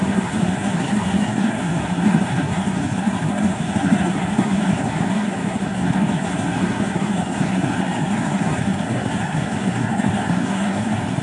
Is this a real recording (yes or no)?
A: no